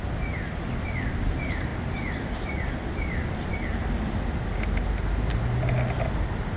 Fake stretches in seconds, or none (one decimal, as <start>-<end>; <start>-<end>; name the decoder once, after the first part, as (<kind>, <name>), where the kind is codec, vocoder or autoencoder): none